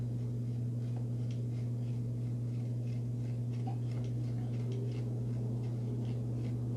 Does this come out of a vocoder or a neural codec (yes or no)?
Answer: no